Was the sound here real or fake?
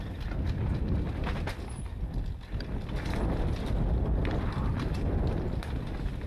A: real